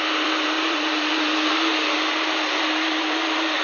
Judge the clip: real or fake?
fake